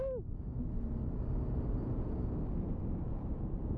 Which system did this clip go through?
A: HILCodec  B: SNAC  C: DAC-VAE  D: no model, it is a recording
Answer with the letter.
D